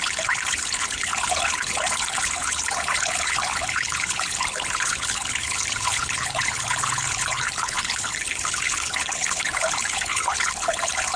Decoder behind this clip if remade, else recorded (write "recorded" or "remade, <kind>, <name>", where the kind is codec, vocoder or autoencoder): remade, codec, HILCodec